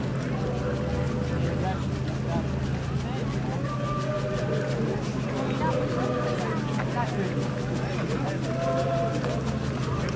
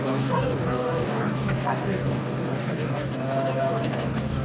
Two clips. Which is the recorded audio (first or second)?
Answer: first